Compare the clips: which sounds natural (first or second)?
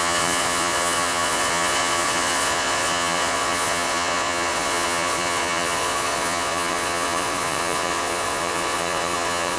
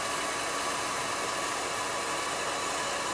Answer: second